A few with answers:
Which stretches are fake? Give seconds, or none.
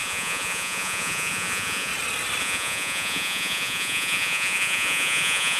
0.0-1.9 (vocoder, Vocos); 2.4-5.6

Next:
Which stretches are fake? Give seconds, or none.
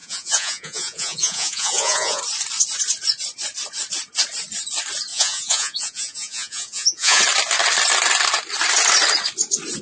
0.0-2.2 (vocoder, Vocos); 5.1-7.2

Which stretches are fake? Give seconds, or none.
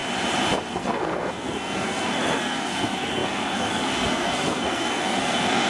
0.7-5.7 (codec, SNAC)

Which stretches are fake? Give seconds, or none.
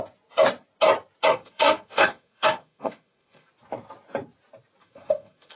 1.3-3.5 (codec, SNAC); 4.8-5.6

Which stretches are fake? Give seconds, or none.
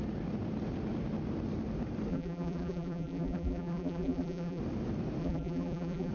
2.1-4.6 (vocoder, BigVGAN v2); 5.2-6.1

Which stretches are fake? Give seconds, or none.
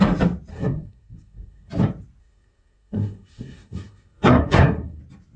0.5-1.7 (codec, SNAC); 2.2-5.0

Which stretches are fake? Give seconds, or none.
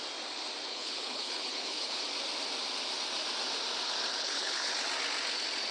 0.7-2.0 (codec, HILCodec); 4.1-4.7